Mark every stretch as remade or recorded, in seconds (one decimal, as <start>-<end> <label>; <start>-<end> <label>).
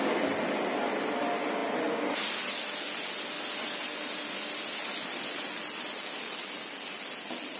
0.0-7.6 recorded